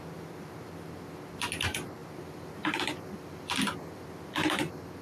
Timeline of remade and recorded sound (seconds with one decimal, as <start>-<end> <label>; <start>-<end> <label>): 0.0-2.0 recorded; 2.0-5.0 remade